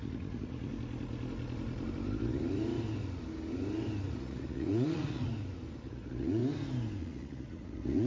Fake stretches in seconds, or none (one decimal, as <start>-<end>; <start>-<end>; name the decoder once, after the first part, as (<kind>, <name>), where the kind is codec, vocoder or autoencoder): 0.0-0.7 (vocoder, Vocos); 4.1-5.3; 5.9-6.4; 7.0-8.1